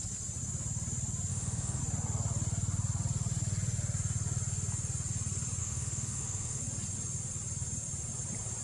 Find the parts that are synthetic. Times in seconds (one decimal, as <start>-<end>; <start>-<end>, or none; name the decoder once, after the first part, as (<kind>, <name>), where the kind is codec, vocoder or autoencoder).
1.3-1.8 (autoencoder, DAC-VAE); 5.6-6.6